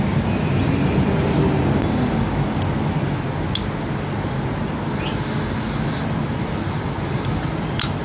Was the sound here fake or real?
real